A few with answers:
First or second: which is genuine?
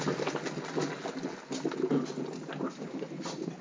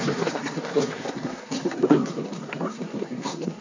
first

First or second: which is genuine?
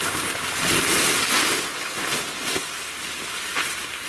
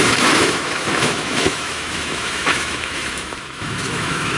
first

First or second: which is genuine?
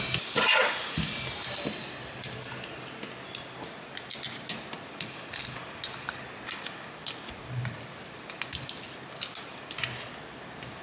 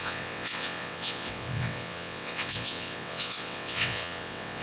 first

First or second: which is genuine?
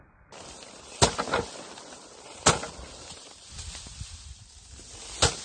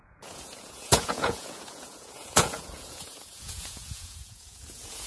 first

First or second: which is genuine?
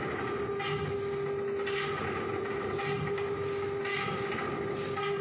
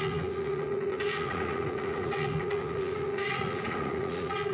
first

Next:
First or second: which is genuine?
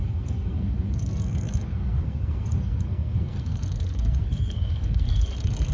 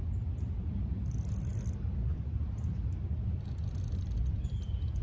second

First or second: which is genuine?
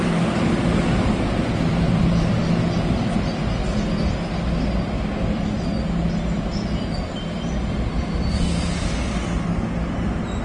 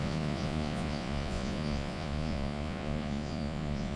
first